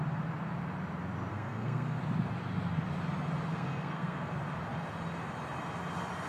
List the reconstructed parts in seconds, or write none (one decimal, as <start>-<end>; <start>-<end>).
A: 1.3-2.0; 3.5-4.3